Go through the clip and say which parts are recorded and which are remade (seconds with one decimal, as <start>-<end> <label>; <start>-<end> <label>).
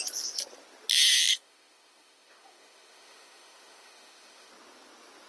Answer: 0.0-1.3 recorded; 1.3-4.5 remade; 4.5-5.3 recorded